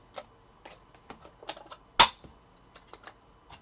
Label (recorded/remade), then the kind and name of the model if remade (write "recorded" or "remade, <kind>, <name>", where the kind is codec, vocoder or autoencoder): recorded